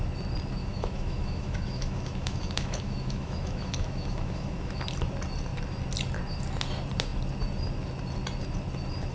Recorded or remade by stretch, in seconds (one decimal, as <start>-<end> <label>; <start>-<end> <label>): 0.0-0.6 recorded; 0.6-4.8 remade; 4.8-9.1 recorded